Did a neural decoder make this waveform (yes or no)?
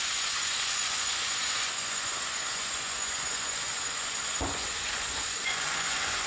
yes